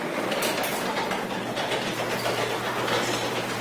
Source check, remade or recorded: recorded